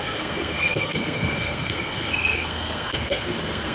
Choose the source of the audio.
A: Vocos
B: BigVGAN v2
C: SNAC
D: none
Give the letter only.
C